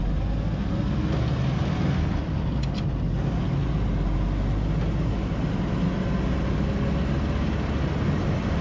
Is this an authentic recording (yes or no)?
yes